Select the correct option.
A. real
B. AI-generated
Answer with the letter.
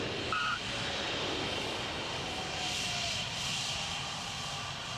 A